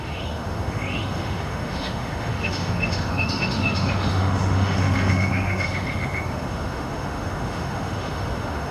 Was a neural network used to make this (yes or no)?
yes